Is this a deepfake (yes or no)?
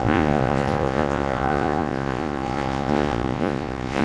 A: yes